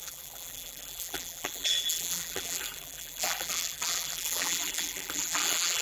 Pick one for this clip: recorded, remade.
remade